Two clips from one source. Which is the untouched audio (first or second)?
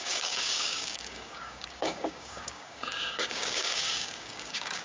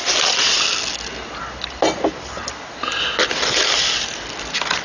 second